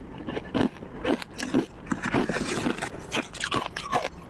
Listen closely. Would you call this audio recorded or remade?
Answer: recorded